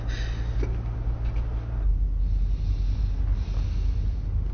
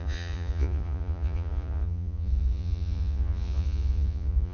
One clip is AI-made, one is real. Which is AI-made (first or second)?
second